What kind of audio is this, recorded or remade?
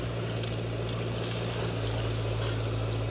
recorded